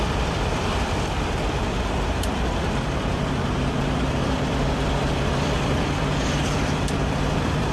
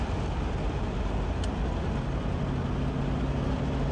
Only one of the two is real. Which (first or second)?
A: second